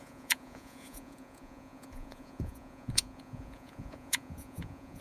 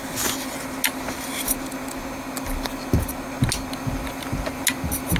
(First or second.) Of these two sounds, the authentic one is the second